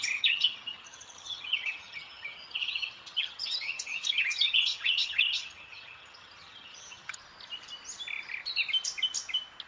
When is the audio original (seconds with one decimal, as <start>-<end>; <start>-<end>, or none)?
7.2-9.7